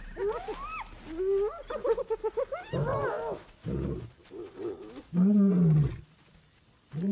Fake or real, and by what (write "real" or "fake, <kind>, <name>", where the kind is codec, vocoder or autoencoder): real